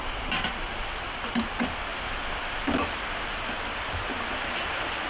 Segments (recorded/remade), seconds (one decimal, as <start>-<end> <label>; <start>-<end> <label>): 0.0-0.5 remade; 0.5-1.9 recorded; 1.9-2.6 remade; 2.6-3.3 recorded; 3.3-4.1 remade; 4.1-5.1 recorded